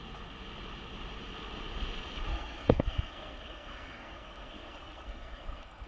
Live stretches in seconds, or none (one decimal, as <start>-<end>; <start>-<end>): 0.0-2.3